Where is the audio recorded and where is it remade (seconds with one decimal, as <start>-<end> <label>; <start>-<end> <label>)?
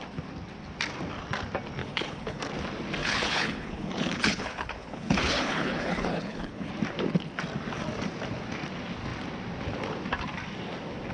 0.0-1.8 recorded; 1.8-2.4 remade; 2.4-3.0 recorded; 3.0-6.7 remade; 6.7-11.1 recorded